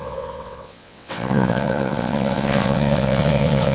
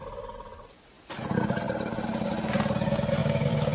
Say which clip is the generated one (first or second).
first